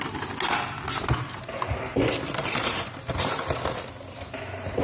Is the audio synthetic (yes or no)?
no